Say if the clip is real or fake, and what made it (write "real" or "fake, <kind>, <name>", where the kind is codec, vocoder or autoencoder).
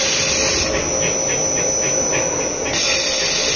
real